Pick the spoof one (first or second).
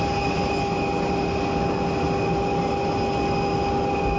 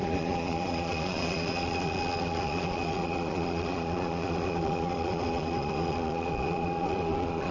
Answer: second